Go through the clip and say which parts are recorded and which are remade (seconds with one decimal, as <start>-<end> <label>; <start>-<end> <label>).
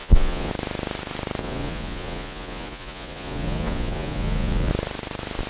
0.0-0.5 remade; 0.5-1.4 recorded; 1.4-4.7 remade; 4.7-5.5 recorded